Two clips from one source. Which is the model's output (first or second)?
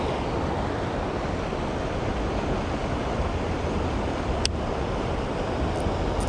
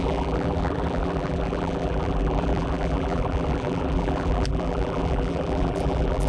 second